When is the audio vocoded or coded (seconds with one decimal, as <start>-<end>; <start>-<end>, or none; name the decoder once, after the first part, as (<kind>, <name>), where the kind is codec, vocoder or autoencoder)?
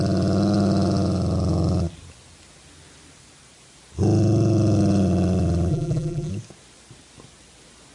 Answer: 5.7-6.3 (vocoder, BigVGAN v2)